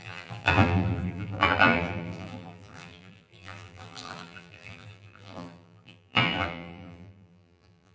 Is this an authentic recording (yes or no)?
no